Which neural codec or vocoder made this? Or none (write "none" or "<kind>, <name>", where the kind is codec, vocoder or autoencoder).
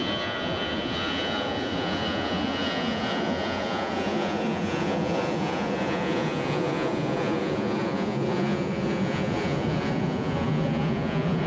vocoder, Vocos